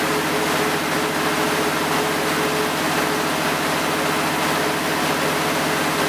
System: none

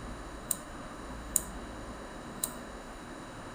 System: autoencoder, DAC-VAE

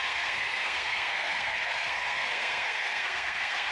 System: codec, SNAC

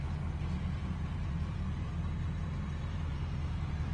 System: vocoder, BigVGAN v2